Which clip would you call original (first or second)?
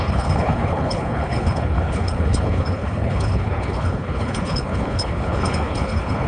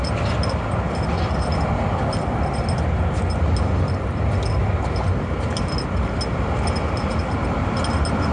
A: second